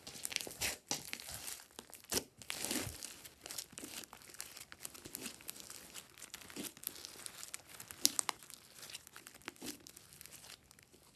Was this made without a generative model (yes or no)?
yes